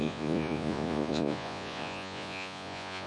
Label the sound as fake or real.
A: fake